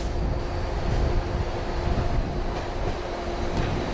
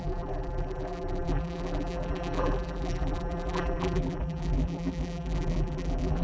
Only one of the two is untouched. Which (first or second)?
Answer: first